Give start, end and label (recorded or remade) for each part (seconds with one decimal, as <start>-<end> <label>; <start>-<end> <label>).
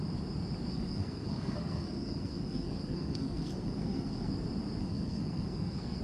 0.0-0.7 recorded; 0.7-4.3 remade; 4.3-4.8 recorded; 4.8-6.0 remade